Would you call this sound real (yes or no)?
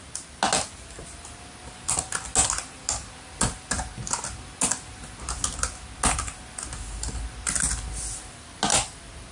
yes